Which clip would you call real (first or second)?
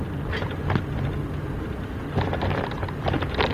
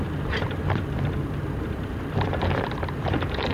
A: first